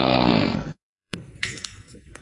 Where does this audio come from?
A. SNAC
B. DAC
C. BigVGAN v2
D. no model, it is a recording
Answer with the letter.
A